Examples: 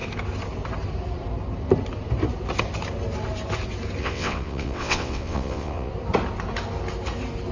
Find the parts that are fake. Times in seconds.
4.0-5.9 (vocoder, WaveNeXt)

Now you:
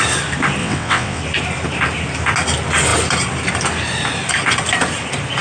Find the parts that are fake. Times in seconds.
0.6-1.2 (vocoder, WaveNeXt)

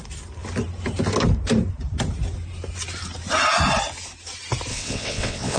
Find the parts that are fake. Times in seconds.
4.7-5.6 (vocoder, WaveNeXt)

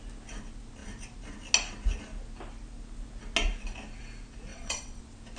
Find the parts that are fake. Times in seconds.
4.5-5.0 (vocoder, WaveNeXt)

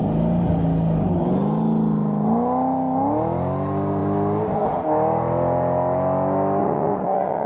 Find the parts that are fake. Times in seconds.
6.6-7.5 (vocoder, WaveNeXt)

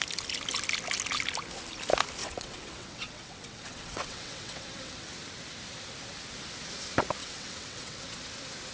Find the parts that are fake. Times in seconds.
2.2-5.1 (vocoder, WaveNeXt); 7.2-8.2

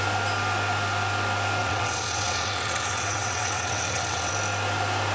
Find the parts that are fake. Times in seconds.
1.6-4.3 (vocoder, WaveNeXt)